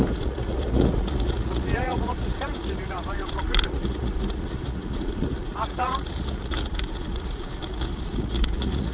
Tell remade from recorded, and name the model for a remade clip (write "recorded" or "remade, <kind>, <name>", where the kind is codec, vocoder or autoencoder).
remade, vocoder, Vocos